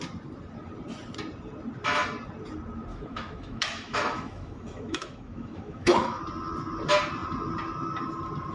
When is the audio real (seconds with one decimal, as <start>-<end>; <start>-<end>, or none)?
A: 0.0-2.9; 6.2-8.5